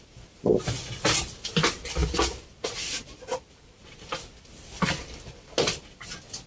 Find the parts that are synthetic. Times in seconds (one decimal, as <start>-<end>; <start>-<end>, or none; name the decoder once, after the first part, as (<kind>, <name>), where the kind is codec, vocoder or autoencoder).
none